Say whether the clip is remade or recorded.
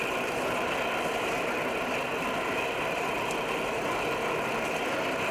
recorded